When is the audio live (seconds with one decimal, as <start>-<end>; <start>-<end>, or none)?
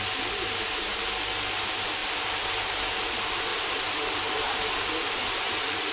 0.0-2.0; 2.9-3.5; 4.7-5.9